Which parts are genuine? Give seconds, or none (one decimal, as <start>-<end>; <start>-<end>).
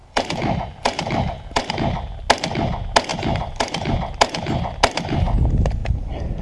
1.7-3.1; 3.9-5.8